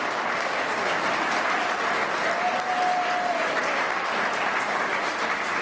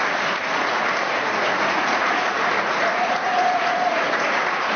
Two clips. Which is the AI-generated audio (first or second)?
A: second